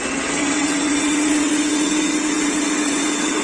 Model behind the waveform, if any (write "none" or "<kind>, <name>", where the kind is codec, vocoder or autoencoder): vocoder, WaveNeXt